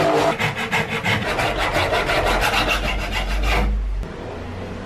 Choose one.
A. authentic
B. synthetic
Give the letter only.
A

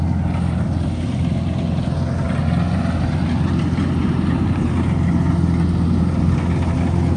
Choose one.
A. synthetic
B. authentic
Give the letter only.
B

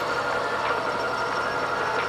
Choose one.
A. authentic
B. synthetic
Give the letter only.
A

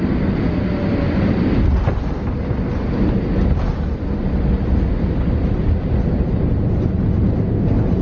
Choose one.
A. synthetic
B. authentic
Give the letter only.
B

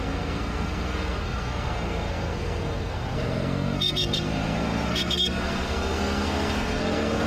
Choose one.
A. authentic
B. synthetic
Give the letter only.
B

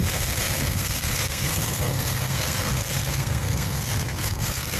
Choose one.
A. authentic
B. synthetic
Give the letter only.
B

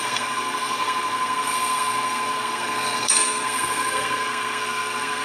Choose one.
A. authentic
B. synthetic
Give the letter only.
B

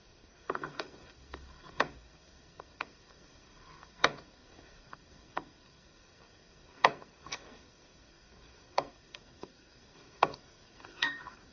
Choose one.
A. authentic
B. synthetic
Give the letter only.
B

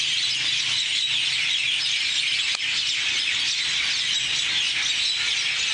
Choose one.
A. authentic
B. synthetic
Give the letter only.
A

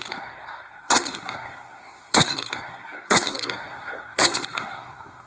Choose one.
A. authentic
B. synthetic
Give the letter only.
B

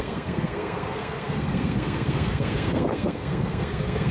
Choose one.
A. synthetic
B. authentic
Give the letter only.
A